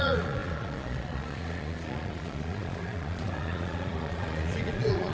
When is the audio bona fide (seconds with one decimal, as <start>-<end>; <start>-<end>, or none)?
none